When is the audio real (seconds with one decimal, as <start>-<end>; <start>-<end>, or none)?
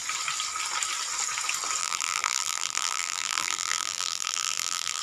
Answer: 0.0-1.8